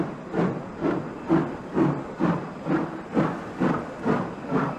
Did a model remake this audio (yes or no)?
no